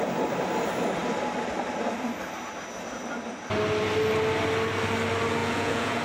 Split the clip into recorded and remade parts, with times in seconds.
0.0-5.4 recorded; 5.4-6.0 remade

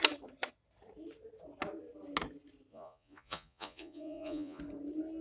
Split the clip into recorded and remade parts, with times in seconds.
0.0-2.7 recorded; 2.7-4.6 remade; 4.6-5.2 recorded